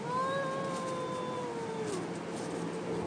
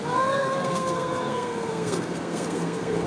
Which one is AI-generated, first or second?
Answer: second